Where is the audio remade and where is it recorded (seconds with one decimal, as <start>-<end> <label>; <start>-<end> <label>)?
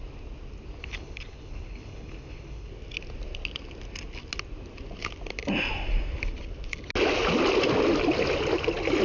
0.0-0.8 recorded; 0.8-2.7 remade; 2.7-9.0 recorded